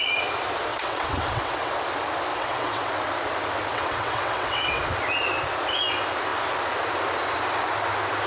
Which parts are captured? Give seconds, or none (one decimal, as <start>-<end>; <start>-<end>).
0.0-0.7; 1.7-2.3; 2.9-3.7; 4.8-8.3